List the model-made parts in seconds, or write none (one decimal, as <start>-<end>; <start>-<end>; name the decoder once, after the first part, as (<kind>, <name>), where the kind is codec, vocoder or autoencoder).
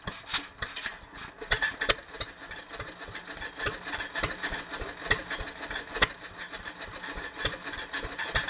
none